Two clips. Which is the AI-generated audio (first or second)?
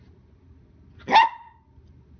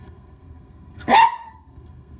second